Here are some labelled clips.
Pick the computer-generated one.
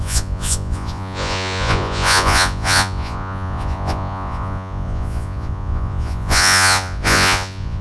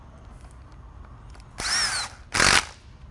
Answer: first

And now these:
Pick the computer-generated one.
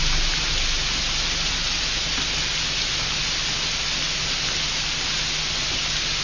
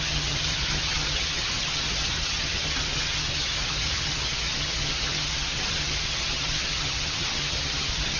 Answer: second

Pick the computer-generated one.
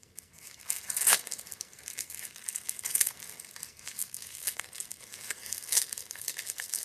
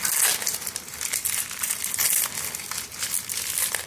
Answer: first